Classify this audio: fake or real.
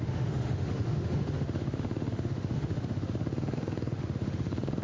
fake